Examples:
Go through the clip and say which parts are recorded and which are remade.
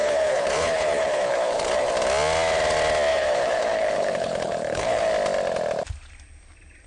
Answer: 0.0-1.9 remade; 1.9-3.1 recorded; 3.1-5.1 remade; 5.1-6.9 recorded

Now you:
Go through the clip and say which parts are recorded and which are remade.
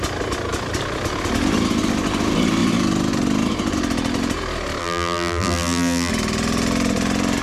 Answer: 0.0-4.8 recorded; 4.8-6.1 remade; 6.1-7.4 recorded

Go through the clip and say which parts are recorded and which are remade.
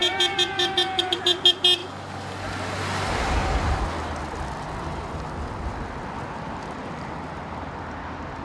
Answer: 0.0-8.4 recorded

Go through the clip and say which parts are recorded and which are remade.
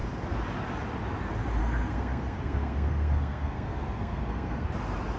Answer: 0.0-1.6 recorded; 1.6-4.7 remade; 4.7-5.2 recorded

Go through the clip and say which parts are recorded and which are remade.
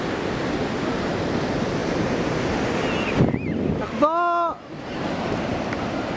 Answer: 0.0-6.2 recorded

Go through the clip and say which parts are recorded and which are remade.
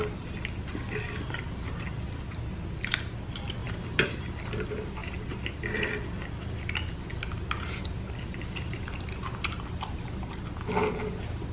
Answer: 0.0-3.6 recorded; 3.6-4.3 remade; 4.3-11.5 recorded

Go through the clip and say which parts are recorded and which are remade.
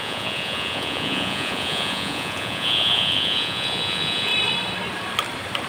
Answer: 0.0-4.3 remade; 4.3-5.7 recorded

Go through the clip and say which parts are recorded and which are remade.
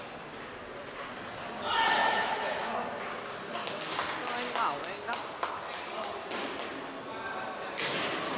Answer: 0.0-2.0 recorded; 2.0-2.7 remade; 2.7-8.4 recorded